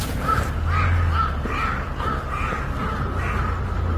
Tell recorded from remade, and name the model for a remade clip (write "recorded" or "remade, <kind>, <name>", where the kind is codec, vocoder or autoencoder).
recorded